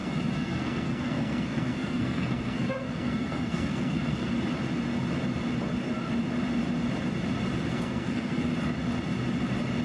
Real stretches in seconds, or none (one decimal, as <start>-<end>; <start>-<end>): 4.3-7.7; 8.5-9.8